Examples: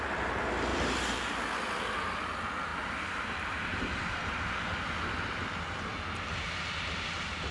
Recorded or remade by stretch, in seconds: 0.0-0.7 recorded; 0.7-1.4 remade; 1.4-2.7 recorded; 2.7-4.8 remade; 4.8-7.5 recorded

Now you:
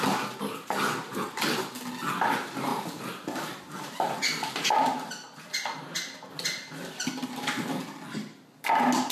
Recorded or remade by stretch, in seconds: 0.0-2.7 recorded; 2.7-4.1 remade; 4.1-9.1 recorded

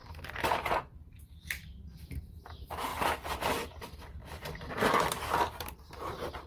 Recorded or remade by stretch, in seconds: 0.0-2.9 remade; 2.9-3.7 recorded; 3.7-6.5 remade

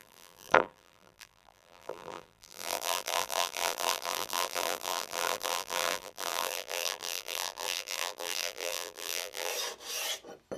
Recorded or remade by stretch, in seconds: 0.0-9.5 remade; 9.5-10.6 recorded

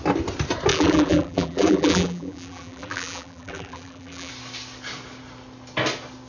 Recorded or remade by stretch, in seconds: 0.0-0.7 recorded; 0.7-4.3 remade; 4.3-6.3 recorded

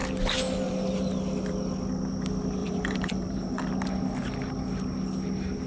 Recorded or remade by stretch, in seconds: 0.0-2.6 recorded; 2.6-3.6 remade; 3.6-5.7 recorded